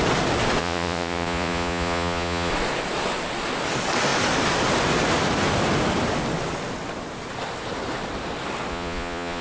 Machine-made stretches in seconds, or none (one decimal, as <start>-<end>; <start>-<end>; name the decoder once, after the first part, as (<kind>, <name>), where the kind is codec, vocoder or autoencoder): 0.6-2.5 (vocoder, Vocos); 8.7-9.4